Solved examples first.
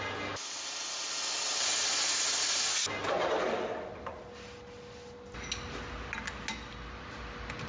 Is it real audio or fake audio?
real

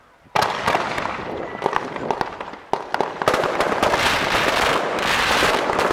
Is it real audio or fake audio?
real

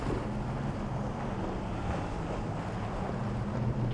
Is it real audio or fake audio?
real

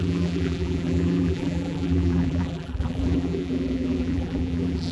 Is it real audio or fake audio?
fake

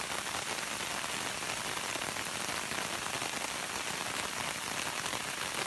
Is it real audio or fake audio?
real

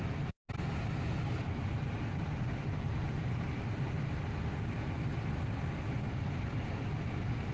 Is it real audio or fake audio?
real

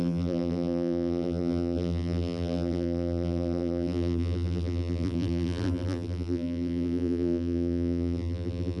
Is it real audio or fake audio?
fake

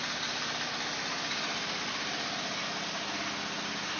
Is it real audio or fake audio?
real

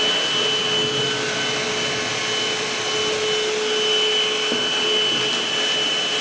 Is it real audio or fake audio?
real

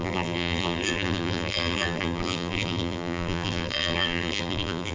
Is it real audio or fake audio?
fake